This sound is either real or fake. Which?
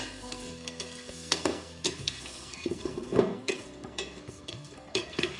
fake